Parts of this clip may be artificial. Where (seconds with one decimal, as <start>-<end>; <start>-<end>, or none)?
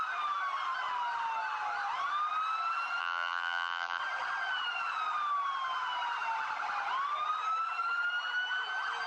3.0-4.0